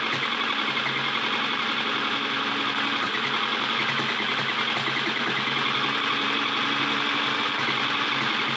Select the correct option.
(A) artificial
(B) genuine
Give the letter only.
B